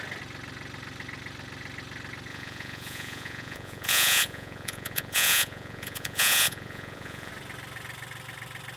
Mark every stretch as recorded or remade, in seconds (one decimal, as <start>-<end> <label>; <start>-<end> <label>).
0.0-2.3 recorded; 2.3-7.3 remade; 7.3-8.8 recorded